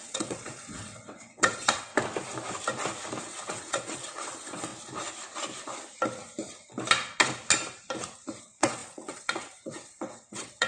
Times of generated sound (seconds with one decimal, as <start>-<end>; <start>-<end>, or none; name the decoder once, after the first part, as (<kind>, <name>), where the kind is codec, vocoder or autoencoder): 0.0-1.9 (vocoder, WaveNeXt); 3.2-4.7; 8.4-10.7